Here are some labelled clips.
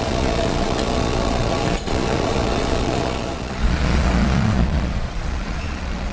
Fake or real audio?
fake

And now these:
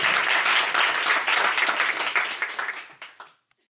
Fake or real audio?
real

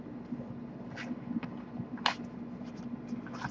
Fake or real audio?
real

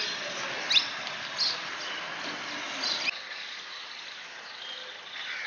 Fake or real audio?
real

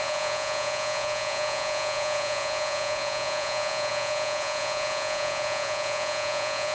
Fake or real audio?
fake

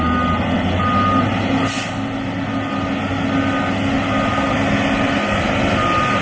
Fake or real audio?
real